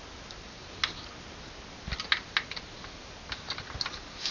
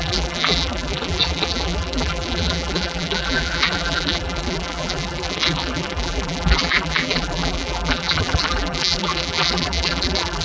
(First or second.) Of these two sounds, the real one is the first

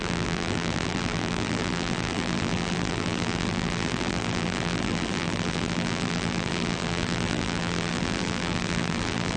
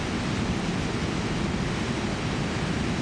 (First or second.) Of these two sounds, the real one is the second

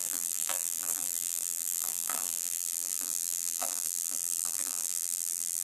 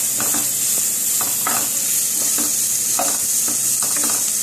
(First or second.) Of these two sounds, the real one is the second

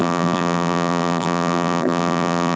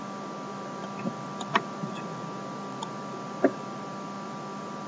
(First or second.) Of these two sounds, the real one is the second